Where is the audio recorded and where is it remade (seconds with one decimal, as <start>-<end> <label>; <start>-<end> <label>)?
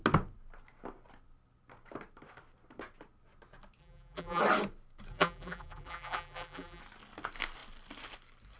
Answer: 0.0-3.8 recorded; 3.8-4.4 remade; 4.4-5.1 recorded; 5.1-6.8 remade; 6.8-8.6 recorded